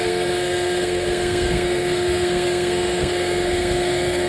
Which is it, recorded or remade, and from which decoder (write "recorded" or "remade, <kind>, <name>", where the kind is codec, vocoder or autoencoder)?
remade, codec, SNAC